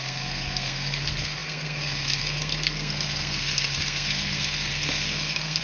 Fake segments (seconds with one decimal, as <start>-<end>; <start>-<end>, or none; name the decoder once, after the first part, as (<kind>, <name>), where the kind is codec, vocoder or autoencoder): 0.0-5.6 (codec, SNAC)